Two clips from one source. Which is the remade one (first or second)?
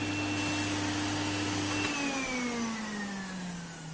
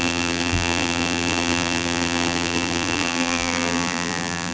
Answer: second